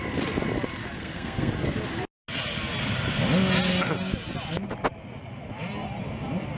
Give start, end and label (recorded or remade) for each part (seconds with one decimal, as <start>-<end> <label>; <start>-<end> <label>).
0.0-1.0 recorded; 1.0-1.5 remade; 1.5-6.6 recorded